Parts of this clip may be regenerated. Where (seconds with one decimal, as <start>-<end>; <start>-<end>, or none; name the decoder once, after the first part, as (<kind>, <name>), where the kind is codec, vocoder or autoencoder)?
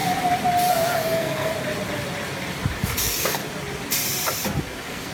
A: 0.7-1.5 (codec, SNAC); 2.8-3.4; 4.6-5.1